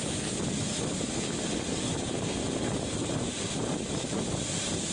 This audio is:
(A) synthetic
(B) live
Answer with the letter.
B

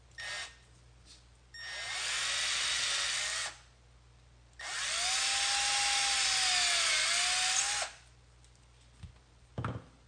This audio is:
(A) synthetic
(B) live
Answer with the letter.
B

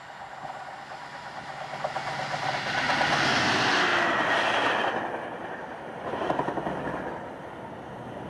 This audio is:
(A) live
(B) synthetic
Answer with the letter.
A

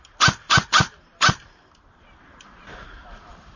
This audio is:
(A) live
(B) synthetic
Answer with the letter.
A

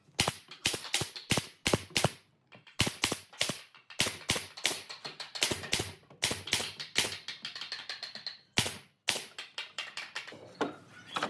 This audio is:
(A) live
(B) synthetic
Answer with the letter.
A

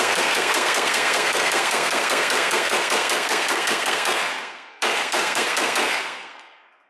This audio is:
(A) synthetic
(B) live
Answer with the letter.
A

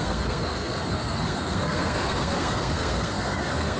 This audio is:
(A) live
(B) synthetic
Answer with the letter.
B